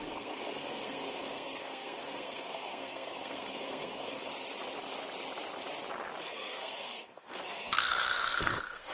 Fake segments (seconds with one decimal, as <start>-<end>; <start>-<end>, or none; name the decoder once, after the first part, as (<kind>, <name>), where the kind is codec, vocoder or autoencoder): 0.0-4.3 (codec, SNAC); 6.2-8.9

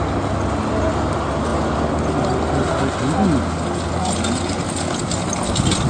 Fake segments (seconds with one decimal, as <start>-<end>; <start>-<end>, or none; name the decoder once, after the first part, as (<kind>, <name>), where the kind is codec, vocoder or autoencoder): none

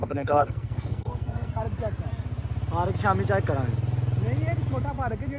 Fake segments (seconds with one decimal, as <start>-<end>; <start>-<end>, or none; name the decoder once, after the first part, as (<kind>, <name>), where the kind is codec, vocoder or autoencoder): 0.0-1.6 (codec, SNAC)

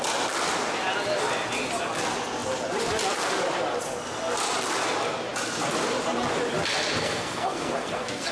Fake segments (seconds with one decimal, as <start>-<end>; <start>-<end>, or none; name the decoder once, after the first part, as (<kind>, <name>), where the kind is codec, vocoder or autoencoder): 7.0-8.3 (codec, SNAC)

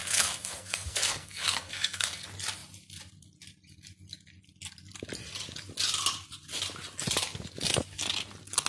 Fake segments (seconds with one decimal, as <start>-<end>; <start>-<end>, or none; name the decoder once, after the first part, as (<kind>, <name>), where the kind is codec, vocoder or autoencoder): 0.0-2.2 (codec, SNAC)

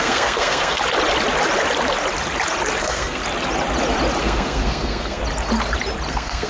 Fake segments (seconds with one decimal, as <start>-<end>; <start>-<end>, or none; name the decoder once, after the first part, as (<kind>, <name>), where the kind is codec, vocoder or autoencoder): 0.0-0.8 (codec, SNAC); 2.8-3.2; 4.2-5.2; 6.1-6.5

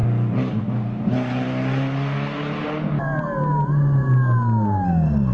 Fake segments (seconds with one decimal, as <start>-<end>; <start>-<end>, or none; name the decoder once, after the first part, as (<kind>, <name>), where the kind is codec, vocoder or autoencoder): none